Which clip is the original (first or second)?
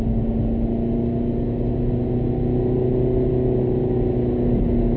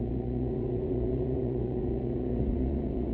first